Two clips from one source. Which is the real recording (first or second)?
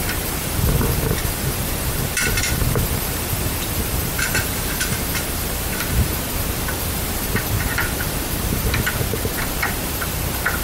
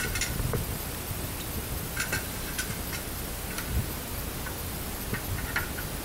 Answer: second